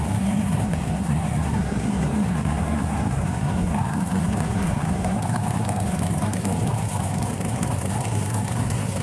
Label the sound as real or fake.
fake